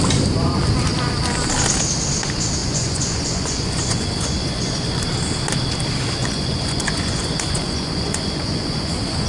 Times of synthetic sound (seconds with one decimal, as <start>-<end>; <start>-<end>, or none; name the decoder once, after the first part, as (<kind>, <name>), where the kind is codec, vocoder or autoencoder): 2.6-5.0 (vocoder, Vocos); 6.2-9.3